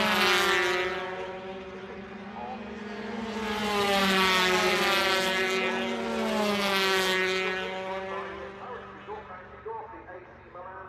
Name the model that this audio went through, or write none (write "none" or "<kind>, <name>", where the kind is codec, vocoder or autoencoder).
none